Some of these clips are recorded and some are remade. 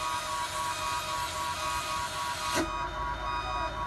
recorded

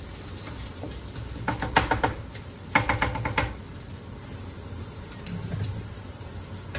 recorded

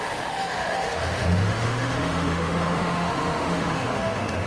remade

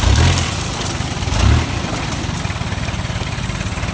recorded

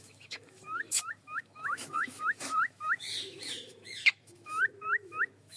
remade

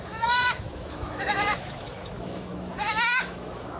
remade